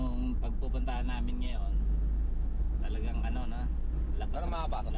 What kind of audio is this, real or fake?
real